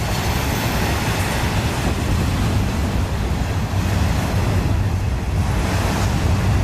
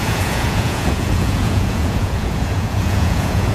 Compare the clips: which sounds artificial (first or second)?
second